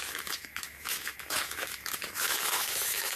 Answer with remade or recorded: remade